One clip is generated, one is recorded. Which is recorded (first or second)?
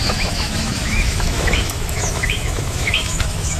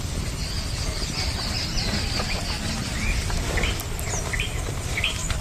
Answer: second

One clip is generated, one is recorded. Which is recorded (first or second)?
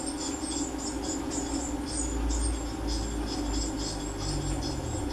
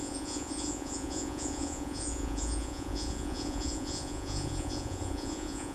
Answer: first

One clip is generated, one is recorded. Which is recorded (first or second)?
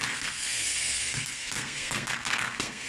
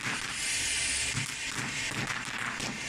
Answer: second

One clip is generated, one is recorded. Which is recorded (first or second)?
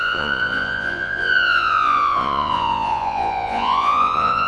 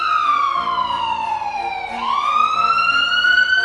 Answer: second